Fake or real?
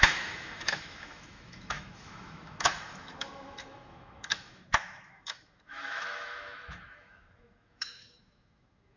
fake